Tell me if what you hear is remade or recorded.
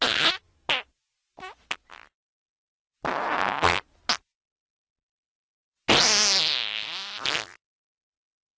recorded